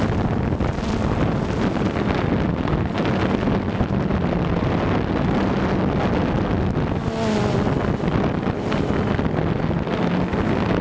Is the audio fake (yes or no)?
no